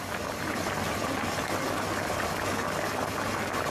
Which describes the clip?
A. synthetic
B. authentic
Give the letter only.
B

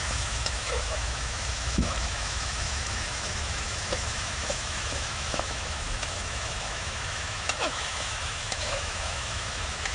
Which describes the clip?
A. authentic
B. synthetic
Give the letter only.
B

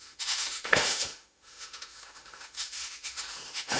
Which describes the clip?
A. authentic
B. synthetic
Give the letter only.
B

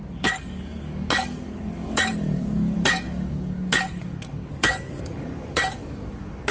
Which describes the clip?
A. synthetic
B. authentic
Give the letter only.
A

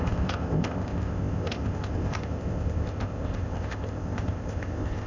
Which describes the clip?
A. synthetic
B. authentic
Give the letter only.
A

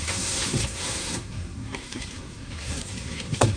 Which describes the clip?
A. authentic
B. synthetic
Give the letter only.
B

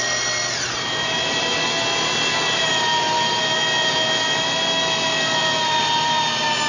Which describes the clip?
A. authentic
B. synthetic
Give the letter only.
A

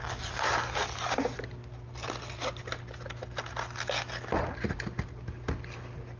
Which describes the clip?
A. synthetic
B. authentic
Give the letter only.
B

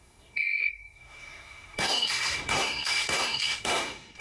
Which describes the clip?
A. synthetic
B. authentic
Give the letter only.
A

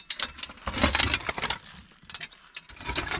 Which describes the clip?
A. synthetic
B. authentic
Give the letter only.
B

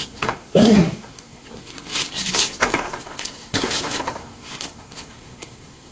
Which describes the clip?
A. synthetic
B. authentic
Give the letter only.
A